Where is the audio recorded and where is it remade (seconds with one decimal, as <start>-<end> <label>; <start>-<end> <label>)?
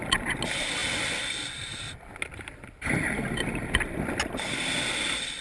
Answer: 0.0-5.4 recorded